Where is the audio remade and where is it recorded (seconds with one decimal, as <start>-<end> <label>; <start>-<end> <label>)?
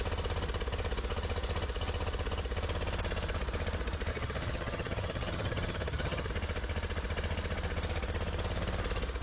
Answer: 0.0-4.1 recorded; 4.1-6.3 remade; 6.3-9.2 recorded